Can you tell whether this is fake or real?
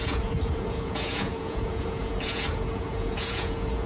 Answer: fake